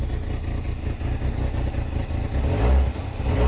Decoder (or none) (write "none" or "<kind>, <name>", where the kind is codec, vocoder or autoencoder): none